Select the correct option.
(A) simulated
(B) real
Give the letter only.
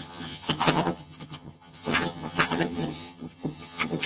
A